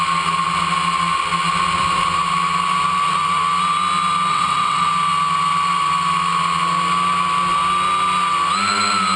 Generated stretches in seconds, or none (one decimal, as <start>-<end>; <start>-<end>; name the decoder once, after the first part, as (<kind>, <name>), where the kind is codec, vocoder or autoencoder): 4.3-4.9 (vocoder, WaveNeXt)